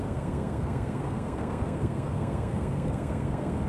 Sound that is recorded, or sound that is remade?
remade